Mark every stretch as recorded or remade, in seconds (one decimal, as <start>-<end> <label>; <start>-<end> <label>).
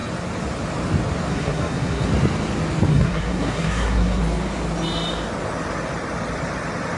0.0-1.3 recorded; 1.3-2.1 remade; 2.1-2.9 recorded; 2.9-4.2 remade; 4.2-7.0 recorded